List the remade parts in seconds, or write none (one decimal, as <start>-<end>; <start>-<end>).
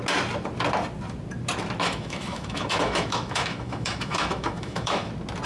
1.8-5.1